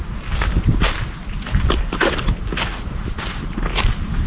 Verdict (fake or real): real